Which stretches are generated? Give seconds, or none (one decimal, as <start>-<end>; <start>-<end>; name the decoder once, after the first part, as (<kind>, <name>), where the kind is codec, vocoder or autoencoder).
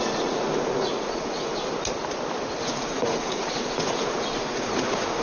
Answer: 0.0-1.7 (vocoder, Vocos); 2.6-5.2